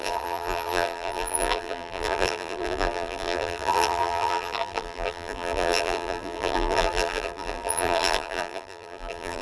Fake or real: fake